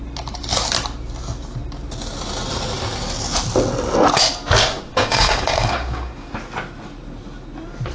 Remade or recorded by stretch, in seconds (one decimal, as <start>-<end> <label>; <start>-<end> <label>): 0.0-4.9 recorded; 4.9-6.3 remade; 6.3-7.9 recorded